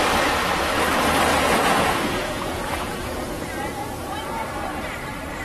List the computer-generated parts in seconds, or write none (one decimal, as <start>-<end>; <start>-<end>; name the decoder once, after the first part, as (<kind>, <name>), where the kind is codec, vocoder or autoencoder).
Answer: 1.3-4.4 (vocoder, Vocos)